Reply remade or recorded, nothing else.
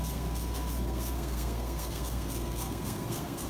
remade